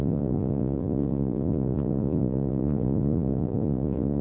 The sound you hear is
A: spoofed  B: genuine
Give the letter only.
A